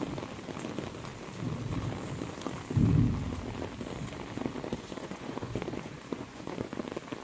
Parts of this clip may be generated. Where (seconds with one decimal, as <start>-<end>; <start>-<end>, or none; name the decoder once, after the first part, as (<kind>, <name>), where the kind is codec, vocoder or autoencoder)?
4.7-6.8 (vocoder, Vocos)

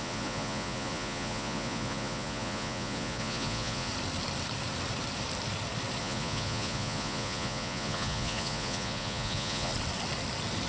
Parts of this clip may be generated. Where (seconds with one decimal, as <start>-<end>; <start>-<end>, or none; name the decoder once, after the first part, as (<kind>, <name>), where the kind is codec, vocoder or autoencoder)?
0.0-3.9 (vocoder, Vocos); 6.0-9.7

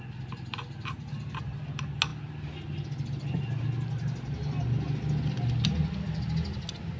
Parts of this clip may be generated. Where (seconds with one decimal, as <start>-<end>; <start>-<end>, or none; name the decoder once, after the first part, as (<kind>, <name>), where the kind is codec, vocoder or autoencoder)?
none

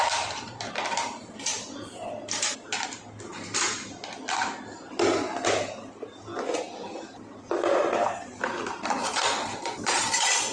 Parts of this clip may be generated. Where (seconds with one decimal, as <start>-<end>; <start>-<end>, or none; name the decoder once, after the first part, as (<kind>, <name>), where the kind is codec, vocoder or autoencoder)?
9.0-10.5 (vocoder, Vocos)

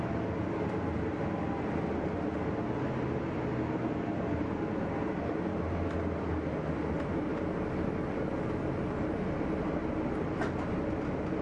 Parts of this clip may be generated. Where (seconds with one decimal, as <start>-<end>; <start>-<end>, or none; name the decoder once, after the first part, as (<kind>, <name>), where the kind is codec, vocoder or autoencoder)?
none